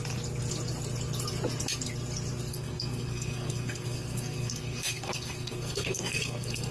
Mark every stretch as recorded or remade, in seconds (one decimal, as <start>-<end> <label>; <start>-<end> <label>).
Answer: 0.0-2.5 recorded; 2.5-6.7 remade